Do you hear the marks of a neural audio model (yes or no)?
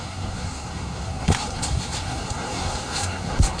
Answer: yes